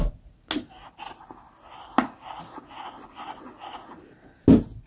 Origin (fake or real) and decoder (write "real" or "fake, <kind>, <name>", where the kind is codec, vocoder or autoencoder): real